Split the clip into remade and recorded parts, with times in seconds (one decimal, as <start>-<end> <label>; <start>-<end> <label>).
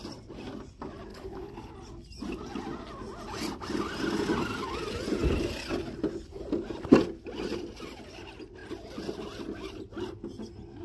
0.0-1.1 recorded; 1.1-1.7 remade; 1.7-10.8 recorded